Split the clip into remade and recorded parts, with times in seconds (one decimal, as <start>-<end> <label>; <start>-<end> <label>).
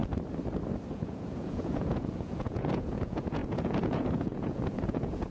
0.0-0.9 recorded; 0.9-5.3 remade